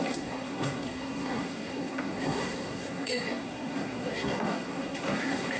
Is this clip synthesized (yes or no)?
yes